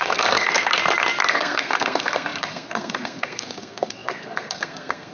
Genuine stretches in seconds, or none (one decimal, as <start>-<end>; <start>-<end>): 0.8-1.3